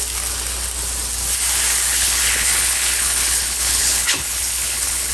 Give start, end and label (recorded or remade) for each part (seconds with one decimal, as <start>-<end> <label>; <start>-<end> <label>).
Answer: 0.0-1.9 recorded; 1.9-5.1 remade